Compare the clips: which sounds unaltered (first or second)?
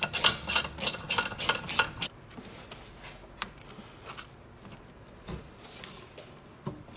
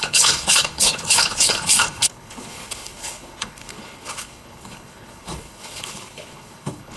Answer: first